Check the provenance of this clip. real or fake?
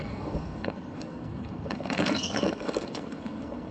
fake